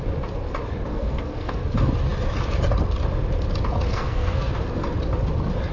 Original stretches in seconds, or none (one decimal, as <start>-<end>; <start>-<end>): 0.0-0.9; 1.6-3.9; 4.5-5.7